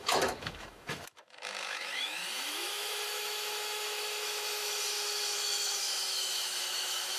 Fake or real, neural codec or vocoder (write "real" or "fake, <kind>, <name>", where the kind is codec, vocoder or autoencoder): fake, autoencoder, DAC-VAE